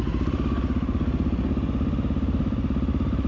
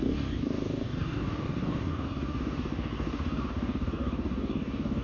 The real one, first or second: first